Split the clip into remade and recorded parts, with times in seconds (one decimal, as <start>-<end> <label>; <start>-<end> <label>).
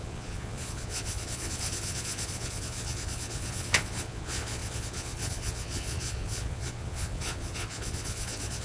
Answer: 0.0-8.6 remade